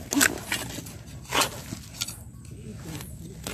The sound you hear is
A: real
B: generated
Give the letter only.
A